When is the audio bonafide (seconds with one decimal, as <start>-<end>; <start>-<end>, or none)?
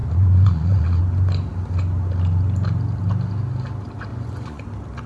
1.0-4.1; 4.6-5.1